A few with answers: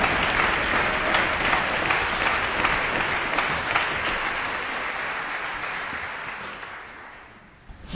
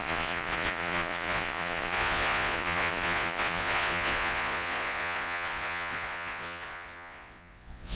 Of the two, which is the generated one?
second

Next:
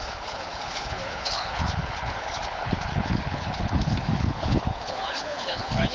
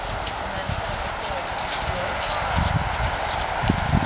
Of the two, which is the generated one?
first